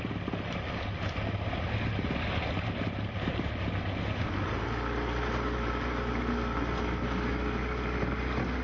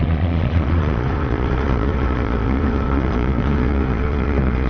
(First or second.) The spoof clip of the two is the second